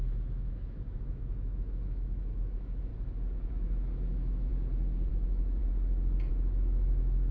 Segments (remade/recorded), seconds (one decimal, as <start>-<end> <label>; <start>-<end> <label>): 0.0-2.9 remade; 2.9-3.5 recorded; 3.5-4.5 remade; 4.5-5.1 recorded; 5.1-5.6 remade; 5.6-6.3 recorded; 6.3-7.3 remade